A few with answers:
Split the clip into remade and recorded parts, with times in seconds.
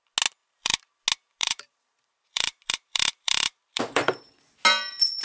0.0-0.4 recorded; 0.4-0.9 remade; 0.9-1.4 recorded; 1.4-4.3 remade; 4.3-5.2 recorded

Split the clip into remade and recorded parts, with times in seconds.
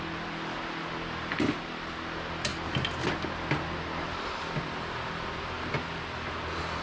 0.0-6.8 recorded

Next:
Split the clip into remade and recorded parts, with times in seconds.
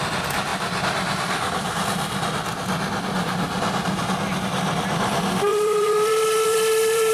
0.0-5.5 recorded; 5.5-7.1 remade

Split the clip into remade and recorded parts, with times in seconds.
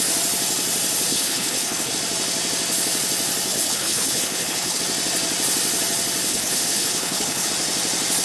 0.0-1.1 recorded; 1.1-1.9 remade; 1.9-3.5 recorded; 3.5-4.8 remade; 4.8-6.3 recorded; 6.3-7.5 remade; 7.5-8.2 recorded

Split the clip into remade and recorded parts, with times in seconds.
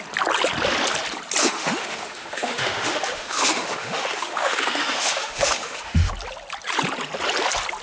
0.0-1.4 recorded; 1.4-6.1 remade; 6.1-7.8 recorded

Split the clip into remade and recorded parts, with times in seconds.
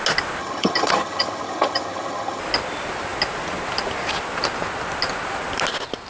0.0-0.4 recorded; 0.4-2.4 remade; 2.4-6.1 recorded